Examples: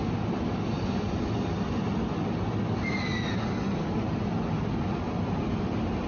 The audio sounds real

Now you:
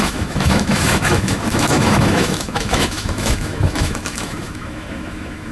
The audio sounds fake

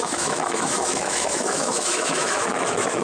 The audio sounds fake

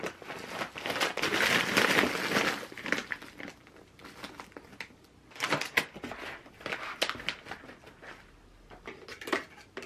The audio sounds real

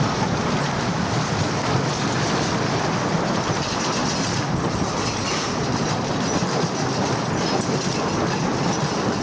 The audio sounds real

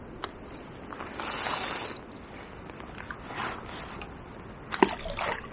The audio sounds real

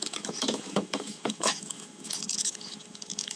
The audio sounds fake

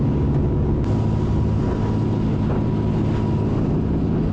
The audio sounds real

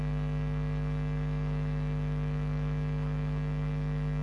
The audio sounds fake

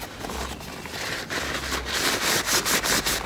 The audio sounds real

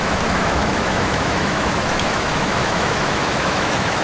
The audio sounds fake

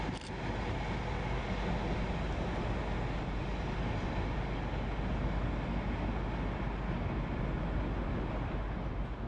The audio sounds real